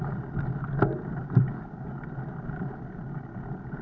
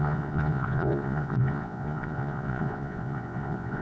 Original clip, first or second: first